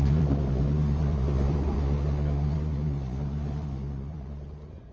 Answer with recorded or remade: remade